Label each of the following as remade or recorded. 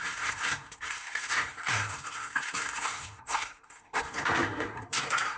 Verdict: remade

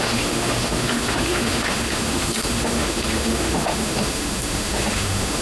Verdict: remade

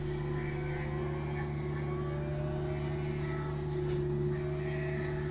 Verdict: recorded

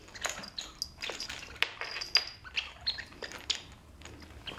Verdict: recorded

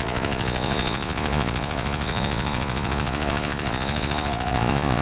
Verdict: remade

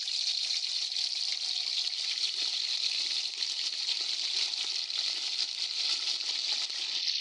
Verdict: recorded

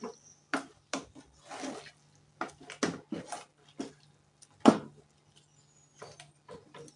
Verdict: recorded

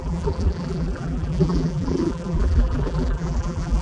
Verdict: remade